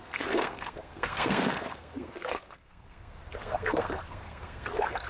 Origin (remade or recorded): remade